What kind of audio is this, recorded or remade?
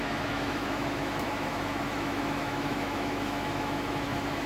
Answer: remade